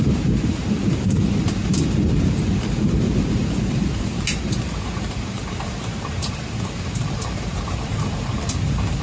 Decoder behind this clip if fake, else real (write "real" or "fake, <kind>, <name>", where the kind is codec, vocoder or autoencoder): fake, vocoder, BigVGAN v2